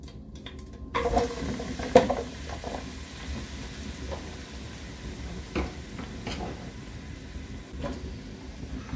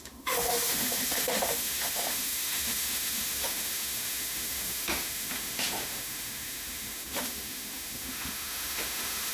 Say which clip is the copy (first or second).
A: second